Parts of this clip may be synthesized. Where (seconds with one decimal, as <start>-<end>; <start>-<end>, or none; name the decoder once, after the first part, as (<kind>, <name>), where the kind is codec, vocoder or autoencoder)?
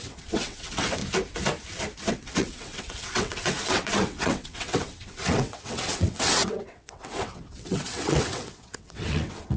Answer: 0.0-1.0 (vocoder, WaveNeXt); 2.1-9.6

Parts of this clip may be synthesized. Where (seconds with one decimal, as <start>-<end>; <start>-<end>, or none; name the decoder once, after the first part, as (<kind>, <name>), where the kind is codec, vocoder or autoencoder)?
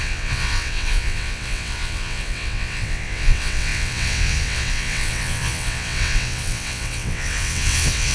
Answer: 0.0-8.1 (vocoder, WaveNeXt)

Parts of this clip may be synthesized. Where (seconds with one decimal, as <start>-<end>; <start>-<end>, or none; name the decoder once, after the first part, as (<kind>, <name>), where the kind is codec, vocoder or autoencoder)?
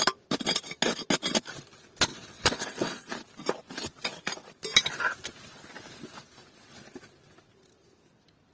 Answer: 2.1-3.1 (vocoder, WaveNeXt)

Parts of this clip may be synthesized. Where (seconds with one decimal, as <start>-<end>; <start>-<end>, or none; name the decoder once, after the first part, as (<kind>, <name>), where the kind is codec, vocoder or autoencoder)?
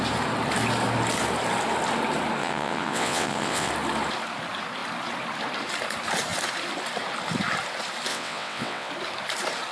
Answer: 2.4-3.7 (vocoder, WaveNeXt); 8.1-8.9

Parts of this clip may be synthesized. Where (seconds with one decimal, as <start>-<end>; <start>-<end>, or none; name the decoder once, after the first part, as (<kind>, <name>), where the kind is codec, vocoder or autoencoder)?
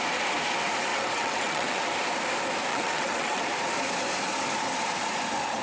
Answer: 0.9-1.8 (vocoder, WaveNeXt); 2.7-3.4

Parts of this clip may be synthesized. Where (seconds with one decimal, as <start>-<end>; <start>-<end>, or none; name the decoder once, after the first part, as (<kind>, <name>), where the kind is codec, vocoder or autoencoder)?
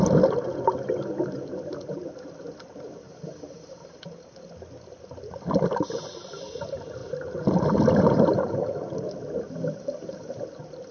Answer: none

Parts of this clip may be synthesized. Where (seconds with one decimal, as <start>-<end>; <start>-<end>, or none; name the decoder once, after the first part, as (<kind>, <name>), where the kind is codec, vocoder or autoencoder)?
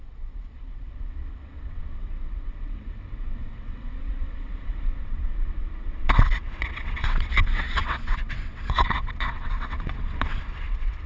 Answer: 0.0-11.1 (vocoder, WaveNeXt)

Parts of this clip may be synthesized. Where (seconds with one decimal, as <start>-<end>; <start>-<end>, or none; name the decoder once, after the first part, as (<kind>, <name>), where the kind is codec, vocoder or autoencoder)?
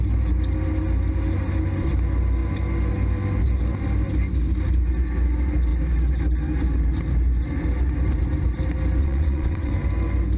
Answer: 9.0-9.7 (vocoder, WaveNeXt)